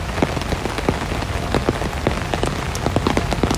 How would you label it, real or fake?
real